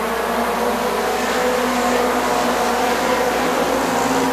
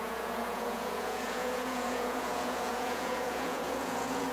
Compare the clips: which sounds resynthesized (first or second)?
second